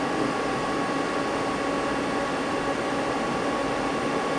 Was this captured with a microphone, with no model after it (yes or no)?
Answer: yes